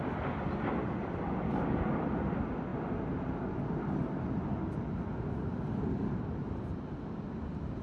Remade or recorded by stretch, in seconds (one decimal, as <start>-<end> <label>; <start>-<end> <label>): 0.0-7.8 recorded